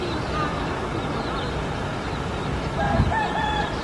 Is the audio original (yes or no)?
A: yes